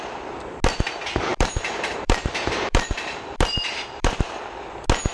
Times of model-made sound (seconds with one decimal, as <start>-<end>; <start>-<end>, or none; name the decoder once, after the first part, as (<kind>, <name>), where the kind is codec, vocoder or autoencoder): 1.3-4.4 (vocoder, BigVGAN v2)